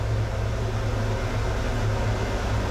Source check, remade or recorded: recorded